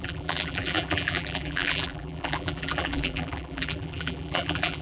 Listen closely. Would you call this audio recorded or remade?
remade